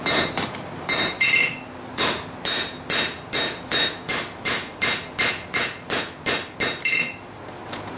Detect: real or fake real